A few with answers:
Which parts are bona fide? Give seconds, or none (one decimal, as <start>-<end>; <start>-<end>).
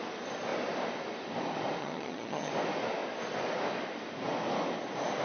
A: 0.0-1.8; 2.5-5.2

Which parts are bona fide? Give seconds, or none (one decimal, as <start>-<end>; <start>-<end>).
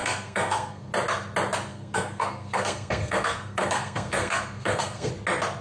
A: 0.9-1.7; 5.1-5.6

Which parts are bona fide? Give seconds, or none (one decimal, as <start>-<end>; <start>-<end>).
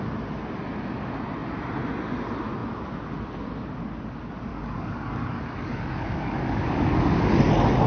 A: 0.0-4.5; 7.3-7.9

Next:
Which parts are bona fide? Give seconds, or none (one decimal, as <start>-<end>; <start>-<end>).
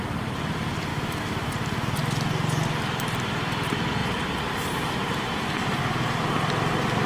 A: 0.0-0.9; 1.5-7.1